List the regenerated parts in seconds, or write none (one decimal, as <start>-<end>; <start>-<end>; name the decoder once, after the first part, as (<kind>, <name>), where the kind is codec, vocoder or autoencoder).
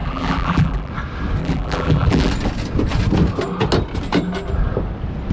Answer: 0.0-0.9 (vocoder, BigVGAN v2); 1.4-2.3